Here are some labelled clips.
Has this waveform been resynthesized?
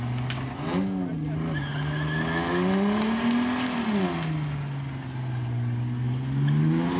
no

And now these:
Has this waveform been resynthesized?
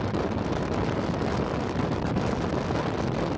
no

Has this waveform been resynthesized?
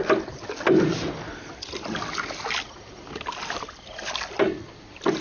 no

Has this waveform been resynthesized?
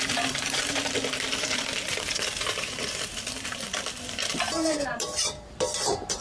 yes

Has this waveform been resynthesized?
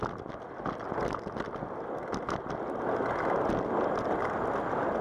no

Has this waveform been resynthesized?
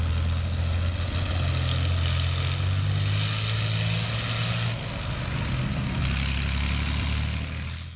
no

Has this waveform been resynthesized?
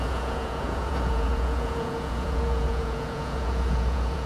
yes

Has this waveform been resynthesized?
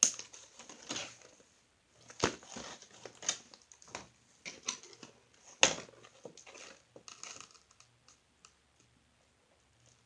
no